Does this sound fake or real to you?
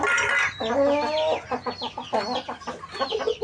real